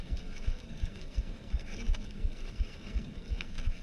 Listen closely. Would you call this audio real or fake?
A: fake